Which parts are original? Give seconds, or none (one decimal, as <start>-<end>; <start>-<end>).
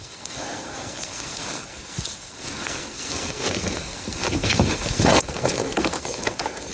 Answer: none